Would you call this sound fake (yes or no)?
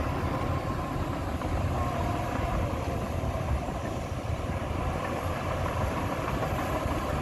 yes